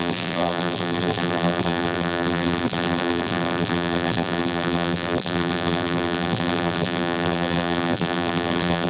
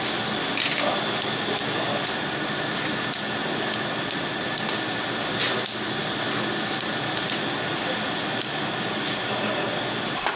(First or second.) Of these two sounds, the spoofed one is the first